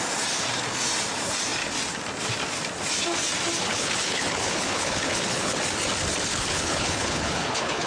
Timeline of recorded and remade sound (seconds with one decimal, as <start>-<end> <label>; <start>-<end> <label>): 0.0-3.7 recorded; 3.7-5.6 remade; 5.6-6.3 recorded; 6.3-7.9 remade